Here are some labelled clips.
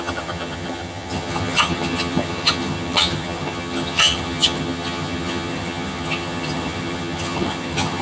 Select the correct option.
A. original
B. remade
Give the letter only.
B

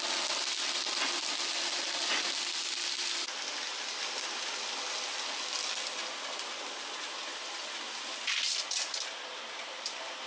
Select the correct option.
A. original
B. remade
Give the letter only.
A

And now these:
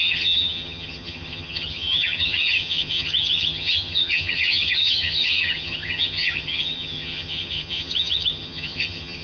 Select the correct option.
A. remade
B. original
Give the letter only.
A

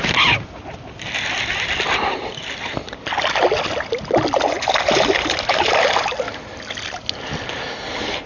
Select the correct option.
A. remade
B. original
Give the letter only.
B